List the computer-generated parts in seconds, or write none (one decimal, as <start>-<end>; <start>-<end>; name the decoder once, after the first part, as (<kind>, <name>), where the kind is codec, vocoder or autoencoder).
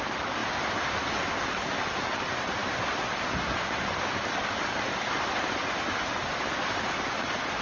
0.4-1.1 (vocoder, BigVGAN v2)